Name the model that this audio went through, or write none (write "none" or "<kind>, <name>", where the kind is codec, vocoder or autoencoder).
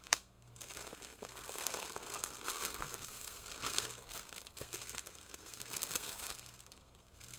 codec, SNAC